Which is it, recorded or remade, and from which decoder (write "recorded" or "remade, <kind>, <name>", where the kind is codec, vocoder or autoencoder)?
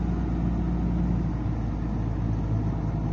recorded